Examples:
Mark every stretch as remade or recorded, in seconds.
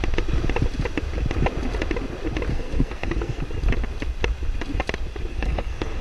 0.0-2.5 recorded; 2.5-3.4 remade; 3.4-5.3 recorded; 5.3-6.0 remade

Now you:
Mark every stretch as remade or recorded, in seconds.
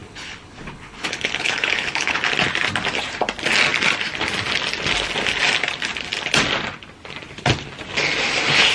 0.0-2.2 remade; 2.2-8.7 recorded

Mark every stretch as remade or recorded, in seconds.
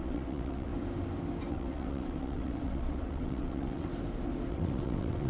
0.0-0.7 remade; 0.7-1.5 recorded; 1.5-3.9 remade; 3.9-4.5 recorded; 4.5-5.3 remade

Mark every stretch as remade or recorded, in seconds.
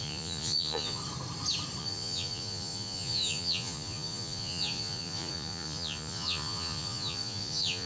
0.0-1.0 remade; 1.0-1.8 recorded; 1.8-7.9 remade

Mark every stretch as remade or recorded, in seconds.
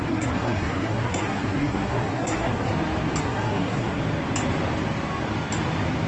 0.0-2.7 remade; 2.7-3.2 recorded; 3.2-4.0 remade; 4.0-6.1 recorded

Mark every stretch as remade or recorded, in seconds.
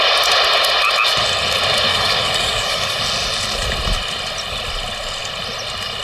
0.0-1.9 recorded; 1.9-3.0 remade; 3.0-6.0 recorded